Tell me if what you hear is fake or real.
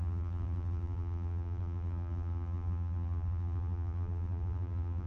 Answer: fake